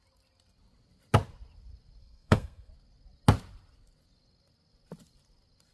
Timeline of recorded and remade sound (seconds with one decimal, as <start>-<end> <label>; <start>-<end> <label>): 0.0-2.0 recorded; 2.0-2.7 remade; 2.7-5.7 recorded